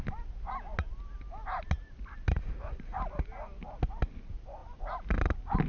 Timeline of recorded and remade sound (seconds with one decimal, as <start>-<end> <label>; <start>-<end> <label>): 0.0-5.7 recorded